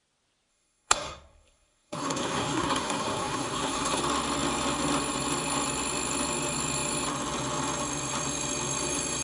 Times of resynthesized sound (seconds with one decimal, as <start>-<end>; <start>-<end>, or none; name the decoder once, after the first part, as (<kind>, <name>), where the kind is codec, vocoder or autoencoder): 0.5-4.0 (codec, SNAC)

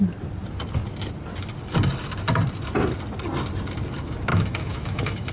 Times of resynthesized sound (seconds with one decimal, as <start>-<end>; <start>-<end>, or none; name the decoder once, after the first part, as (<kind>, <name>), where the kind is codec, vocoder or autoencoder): 4.3-5.3 (autoencoder, DAC-VAE)

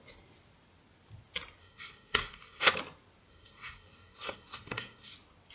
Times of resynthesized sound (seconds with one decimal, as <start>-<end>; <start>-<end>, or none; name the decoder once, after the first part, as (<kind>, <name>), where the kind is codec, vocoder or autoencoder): 1.6-2.7 (codec, SNAC); 3.3-5.1

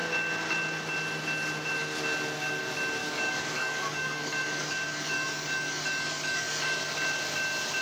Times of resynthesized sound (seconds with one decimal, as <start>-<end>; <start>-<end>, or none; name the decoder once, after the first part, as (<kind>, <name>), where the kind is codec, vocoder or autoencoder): 3.0-6.8 (codec, DAC)

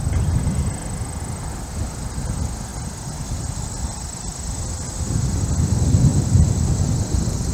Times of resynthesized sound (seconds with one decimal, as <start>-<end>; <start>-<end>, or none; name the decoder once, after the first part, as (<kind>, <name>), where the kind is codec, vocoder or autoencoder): 6.1-6.8 (vocoder, BigVGAN v2)